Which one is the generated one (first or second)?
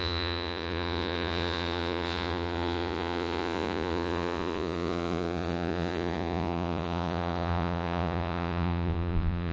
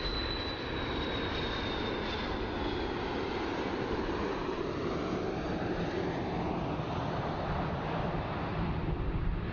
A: first